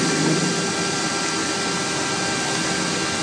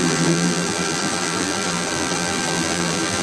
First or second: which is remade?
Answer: second